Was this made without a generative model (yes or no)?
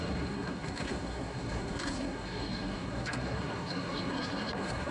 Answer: no